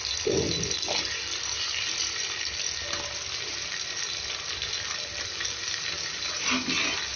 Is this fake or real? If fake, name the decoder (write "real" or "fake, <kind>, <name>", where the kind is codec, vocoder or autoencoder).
real